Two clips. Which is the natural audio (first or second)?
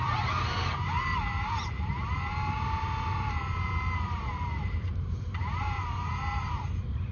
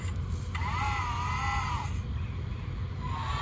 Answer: second